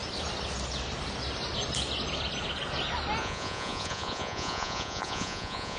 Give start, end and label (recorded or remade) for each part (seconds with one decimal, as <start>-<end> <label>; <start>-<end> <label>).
0.0-3.2 recorded; 3.2-5.8 remade